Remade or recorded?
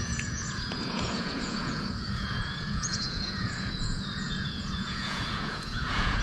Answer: remade